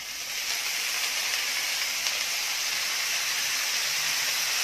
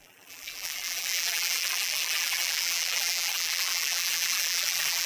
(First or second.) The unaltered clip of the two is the first